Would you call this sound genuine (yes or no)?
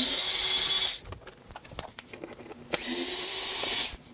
yes